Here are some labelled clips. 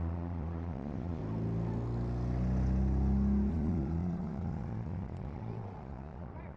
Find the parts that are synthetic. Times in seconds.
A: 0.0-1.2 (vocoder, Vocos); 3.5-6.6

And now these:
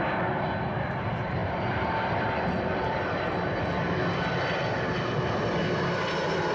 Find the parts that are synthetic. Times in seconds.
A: 1.4-3.0 (vocoder, BigVGAN v2)

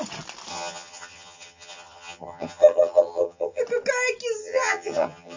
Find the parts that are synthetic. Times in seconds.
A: 0.5-3.6 (vocoder, HiFi-GAN); 4.4-5.4

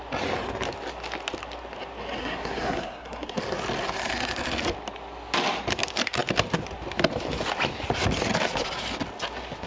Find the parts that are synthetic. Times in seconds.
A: 2.2-3.4 (codec, SNAC)

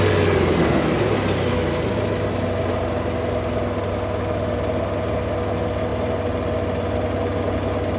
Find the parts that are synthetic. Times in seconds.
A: none